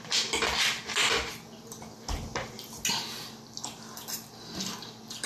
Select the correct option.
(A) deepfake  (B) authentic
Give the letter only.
B